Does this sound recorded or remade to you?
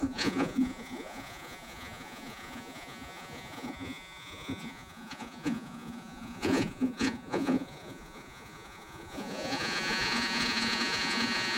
remade